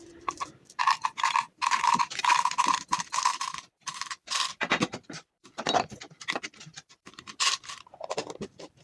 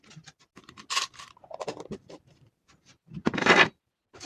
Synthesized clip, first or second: first